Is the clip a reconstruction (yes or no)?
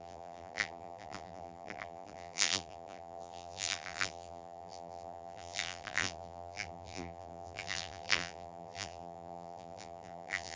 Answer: yes